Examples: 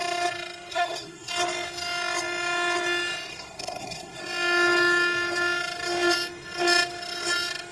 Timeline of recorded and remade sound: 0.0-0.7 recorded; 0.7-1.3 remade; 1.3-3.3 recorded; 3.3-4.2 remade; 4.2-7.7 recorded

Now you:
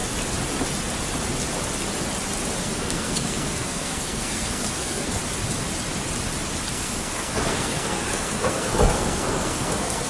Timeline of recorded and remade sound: 0.0-2.6 recorded; 2.6-5.2 remade; 5.2-6.7 recorded; 6.7-10.1 remade

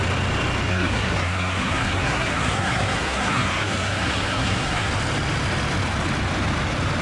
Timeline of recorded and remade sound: 0.0-0.7 recorded; 0.7-4.9 remade; 4.9-7.0 recorded

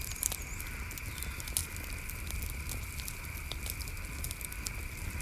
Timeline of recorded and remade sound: 0.0-5.2 recorded

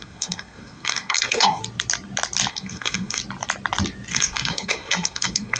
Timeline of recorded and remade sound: 0.0-1.6 remade; 1.6-2.5 recorded; 2.5-3.2 remade; 3.2-4.1 recorded; 4.1-5.6 remade

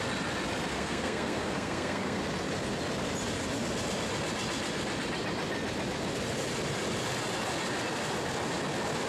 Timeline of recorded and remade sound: 0.0-0.7 recorded; 0.7-2.2 remade; 2.2-9.1 recorded